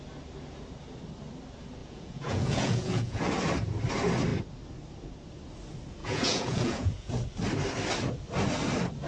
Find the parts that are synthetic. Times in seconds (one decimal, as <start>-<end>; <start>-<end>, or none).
1.8-3.3; 6.0-7.1

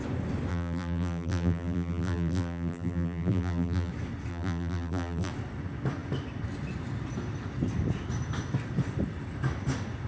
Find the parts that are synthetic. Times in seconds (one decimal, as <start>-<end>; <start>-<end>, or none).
0.5-3.9; 4.3-5.3

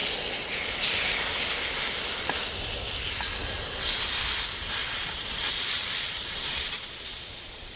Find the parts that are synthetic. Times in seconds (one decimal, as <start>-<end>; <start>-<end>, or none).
4.8-7.8

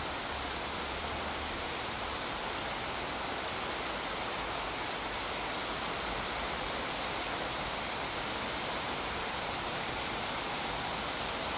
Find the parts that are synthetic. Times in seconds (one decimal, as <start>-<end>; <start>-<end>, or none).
5.6-10.3

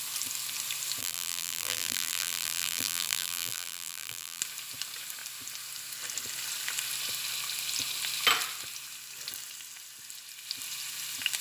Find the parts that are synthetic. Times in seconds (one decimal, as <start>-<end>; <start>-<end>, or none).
1.0-4.4

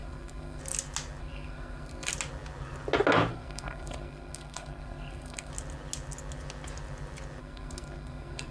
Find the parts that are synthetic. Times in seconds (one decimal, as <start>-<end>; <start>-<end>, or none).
0.0-0.6; 1.2-2.1; 3.3-5.5; 7.4-8.5